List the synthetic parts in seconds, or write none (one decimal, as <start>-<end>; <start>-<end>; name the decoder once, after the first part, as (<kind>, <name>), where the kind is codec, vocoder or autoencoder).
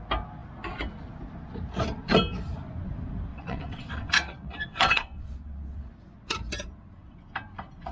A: 3.3-5.9 (vocoder, WaveNeXt)